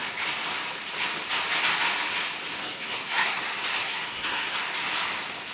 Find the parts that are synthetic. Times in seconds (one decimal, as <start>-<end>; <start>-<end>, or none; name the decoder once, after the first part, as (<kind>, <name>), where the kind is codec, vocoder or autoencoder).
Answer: 2.6-3.4 (codec, SNAC); 3.8-4.6